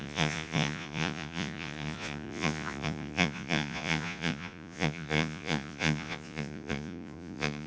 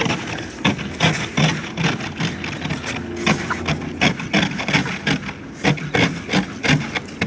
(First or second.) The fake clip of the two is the first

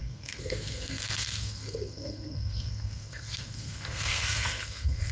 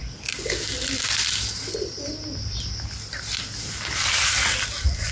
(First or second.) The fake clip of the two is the first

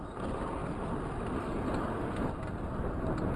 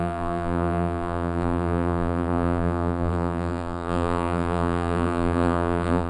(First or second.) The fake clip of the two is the second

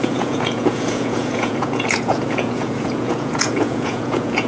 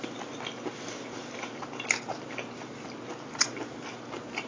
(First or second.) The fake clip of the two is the first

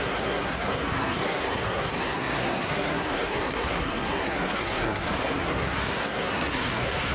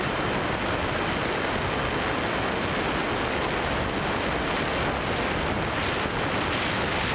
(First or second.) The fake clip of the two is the first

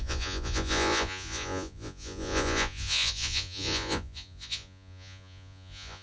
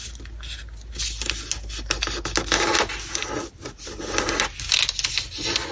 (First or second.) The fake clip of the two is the first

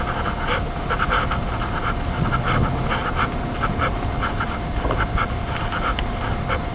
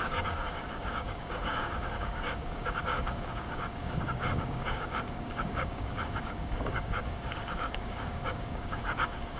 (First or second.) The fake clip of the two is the second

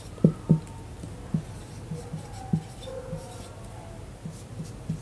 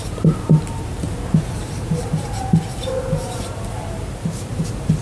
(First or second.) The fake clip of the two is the second